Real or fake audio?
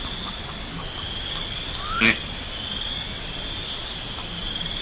real